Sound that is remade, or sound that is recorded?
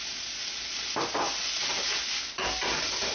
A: recorded